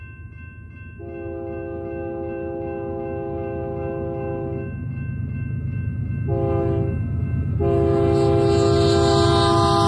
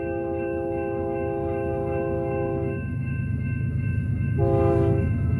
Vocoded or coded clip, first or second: second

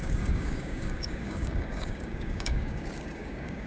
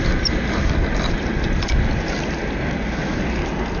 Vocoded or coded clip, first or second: first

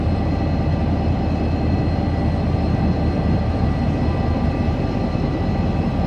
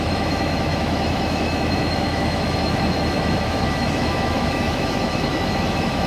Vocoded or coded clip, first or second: second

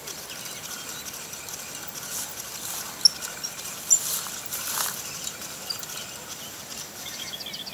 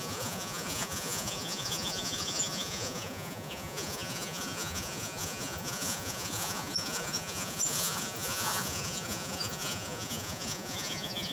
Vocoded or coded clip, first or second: second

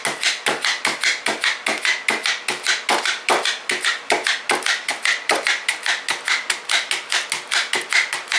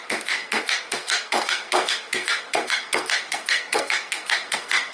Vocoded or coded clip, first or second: second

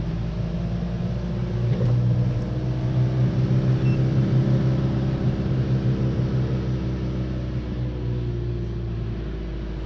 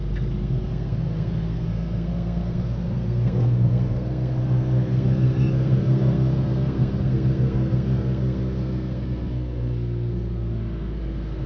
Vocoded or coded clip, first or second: second